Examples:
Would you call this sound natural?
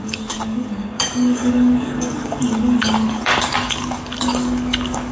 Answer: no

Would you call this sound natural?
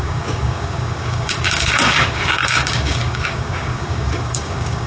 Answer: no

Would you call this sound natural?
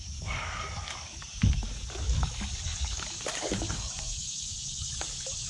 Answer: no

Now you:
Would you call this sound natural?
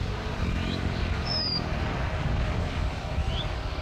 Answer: no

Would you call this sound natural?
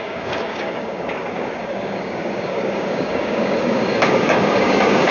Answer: no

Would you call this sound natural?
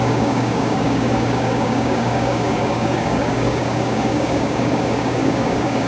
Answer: no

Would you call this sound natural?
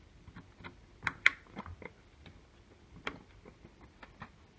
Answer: yes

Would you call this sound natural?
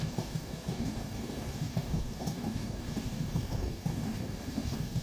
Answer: no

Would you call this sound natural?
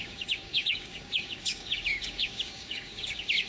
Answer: no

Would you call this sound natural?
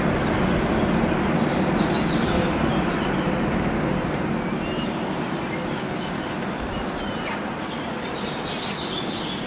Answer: yes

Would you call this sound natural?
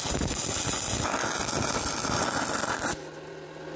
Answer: yes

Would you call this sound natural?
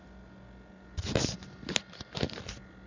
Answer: yes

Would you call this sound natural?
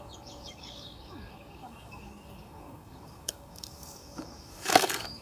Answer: no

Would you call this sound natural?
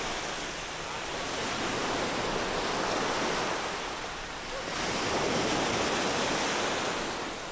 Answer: yes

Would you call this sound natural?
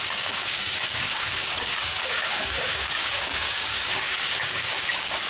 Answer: no